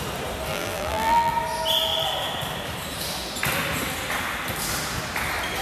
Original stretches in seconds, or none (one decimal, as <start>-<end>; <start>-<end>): 0.0-0.5; 1.3-5.6